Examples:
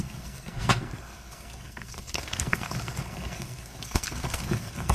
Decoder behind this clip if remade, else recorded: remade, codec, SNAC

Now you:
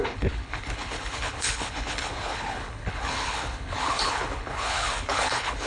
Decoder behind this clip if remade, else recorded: remade, codec, HILCodec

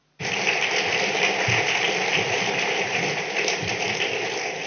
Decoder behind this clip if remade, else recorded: recorded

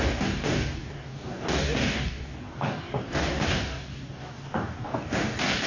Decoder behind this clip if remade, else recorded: remade, codec, DAC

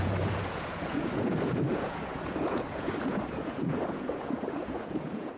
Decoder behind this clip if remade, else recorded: remade, vocoder, Vocos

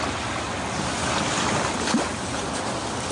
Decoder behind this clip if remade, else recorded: recorded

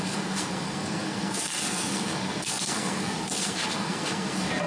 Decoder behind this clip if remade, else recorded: remade, codec, SNAC